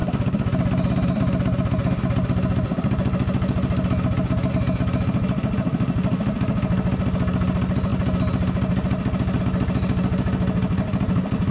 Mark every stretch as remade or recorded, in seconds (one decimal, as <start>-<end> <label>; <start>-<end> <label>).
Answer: 0.0-11.5 recorded